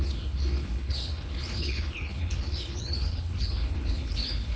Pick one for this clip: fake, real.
fake